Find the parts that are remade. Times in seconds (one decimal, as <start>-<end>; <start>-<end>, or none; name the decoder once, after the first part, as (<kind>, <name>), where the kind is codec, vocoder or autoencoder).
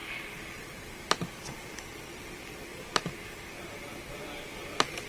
0.0-2.0 (vocoder, BigVGAN v2); 2.7-3.8